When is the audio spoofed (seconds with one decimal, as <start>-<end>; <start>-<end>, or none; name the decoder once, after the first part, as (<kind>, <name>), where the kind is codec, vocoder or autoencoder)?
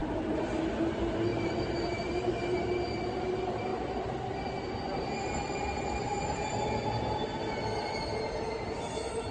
0.0-0.7 (vocoder, BigVGAN v2); 1.3-3.0; 3.7-4.7